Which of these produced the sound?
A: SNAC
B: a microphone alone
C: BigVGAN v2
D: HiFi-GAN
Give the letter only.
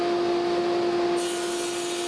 B